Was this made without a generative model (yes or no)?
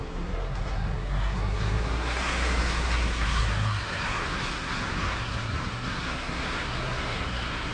no